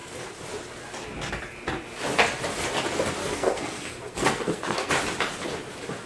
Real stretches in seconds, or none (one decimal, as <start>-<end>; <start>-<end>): 0.0-3.2; 4.9-6.1